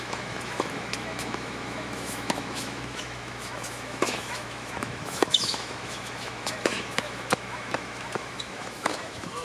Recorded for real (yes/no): no